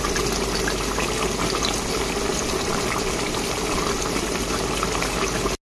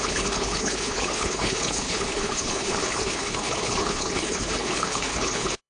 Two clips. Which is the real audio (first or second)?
first